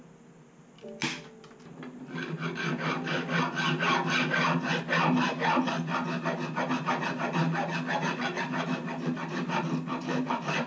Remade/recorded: recorded